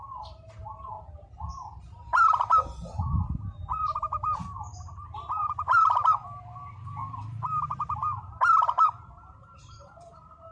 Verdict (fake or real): fake